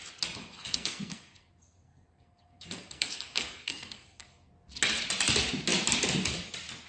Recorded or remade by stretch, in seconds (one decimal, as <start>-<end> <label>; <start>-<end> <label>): 0.0-0.4 recorded; 0.4-4.5 remade; 4.5-6.9 recorded